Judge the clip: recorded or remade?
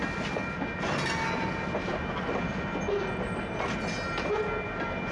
recorded